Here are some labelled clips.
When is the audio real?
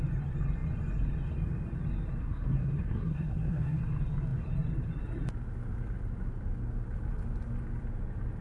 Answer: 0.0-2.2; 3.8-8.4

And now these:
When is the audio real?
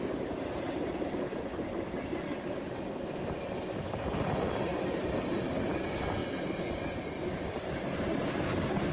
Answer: 0.0-8.9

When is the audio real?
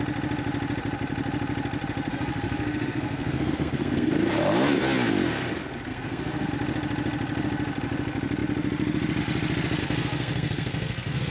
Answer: 0.0-2.1; 4.1-5.9; 6.5-9.8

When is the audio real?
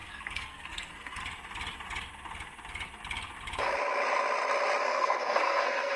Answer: 1.2-4.8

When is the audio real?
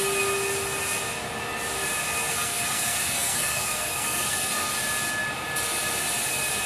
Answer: 0.0-2.3; 4.7-6.7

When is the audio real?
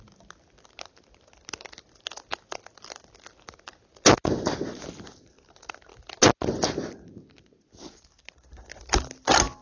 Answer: 0.0-9.6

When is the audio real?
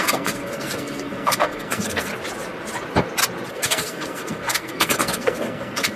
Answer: 2.1-3.5